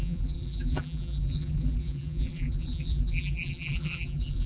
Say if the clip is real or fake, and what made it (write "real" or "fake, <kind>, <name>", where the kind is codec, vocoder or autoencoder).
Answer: fake, vocoder, BigVGAN v2